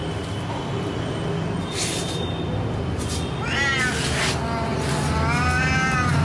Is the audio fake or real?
real